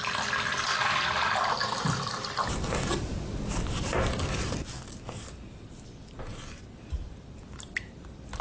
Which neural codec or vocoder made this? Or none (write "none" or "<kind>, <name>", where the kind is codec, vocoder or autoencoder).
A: none